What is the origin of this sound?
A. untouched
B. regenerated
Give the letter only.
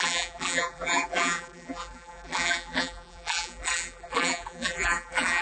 B